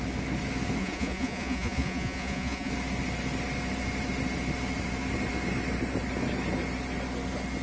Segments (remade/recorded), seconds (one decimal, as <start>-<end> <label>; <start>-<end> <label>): 0.0-0.8 recorded; 0.8-2.7 remade; 2.7-7.6 recorded

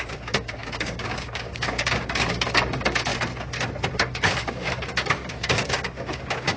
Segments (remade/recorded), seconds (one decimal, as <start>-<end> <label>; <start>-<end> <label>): 0.0-3.1 remade; 3.1-3.9 recorded; 3.9-6.6 remade